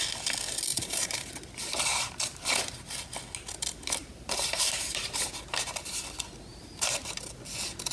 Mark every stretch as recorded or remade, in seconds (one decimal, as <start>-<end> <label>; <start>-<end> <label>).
0.0-0.7 recorded; 0.7-1.3 remade; 1.3-1.9 recorded; 1.9-2.6 remade; 2.6-4.0 recorded; 4.0-5.1 remade; 5.1-6.5 recorded; 6.5-7.1 remade; 7.1-7.9 recorded